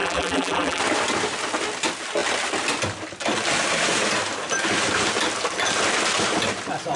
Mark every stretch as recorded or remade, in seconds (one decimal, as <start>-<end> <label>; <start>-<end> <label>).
0.0-0.8 remade; 0.8-7.0 recorded